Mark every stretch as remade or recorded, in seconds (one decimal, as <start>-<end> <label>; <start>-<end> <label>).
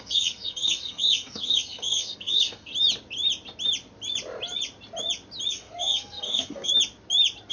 0.0-2.7 remade; 2.7-5.5 recorded; 5.5-6.7 remade; 6.7-7.5 recorded